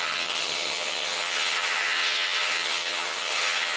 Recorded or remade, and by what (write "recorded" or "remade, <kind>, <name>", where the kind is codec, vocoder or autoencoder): remade, vocoder, HiFi-GAN